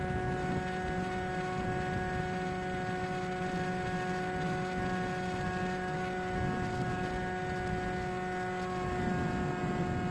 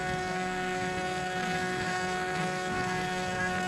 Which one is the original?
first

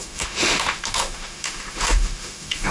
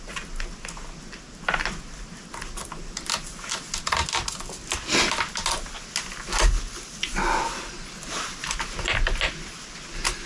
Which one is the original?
second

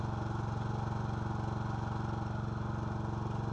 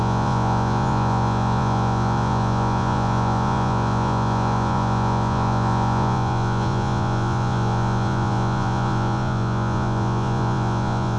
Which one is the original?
first